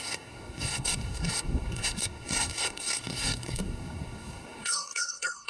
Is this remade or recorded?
remade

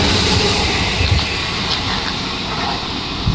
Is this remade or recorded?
recorded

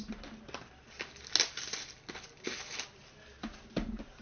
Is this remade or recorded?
recorded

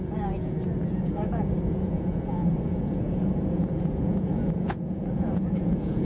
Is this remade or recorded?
remade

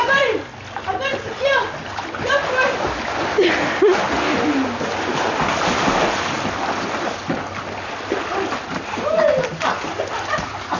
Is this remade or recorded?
recorded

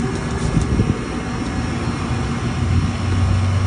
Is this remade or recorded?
recorded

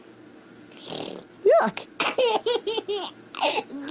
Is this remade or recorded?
recorded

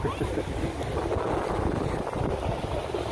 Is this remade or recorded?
recorded